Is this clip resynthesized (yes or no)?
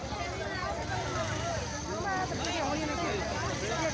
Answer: no